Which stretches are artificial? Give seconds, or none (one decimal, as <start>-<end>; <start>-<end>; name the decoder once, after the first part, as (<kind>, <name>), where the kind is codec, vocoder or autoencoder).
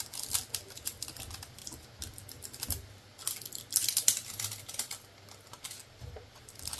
none